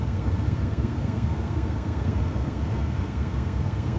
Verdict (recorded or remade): remade